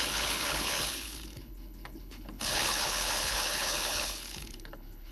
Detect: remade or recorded remade